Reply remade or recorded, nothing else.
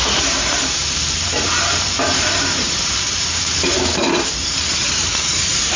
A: remade